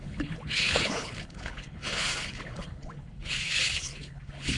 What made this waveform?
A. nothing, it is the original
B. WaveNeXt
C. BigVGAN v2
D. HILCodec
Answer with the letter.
D